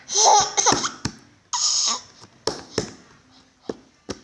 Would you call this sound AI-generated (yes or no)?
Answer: no